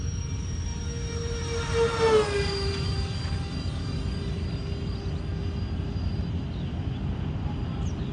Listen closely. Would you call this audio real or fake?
real